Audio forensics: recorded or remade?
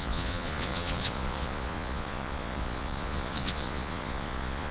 remade